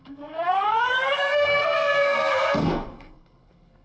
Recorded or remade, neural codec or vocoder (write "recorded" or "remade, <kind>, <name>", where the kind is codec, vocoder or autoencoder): remade, codec, SNAC